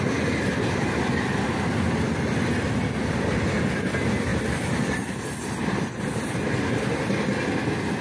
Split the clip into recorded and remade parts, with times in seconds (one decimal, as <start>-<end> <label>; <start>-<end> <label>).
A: 0.0-8.0 recorded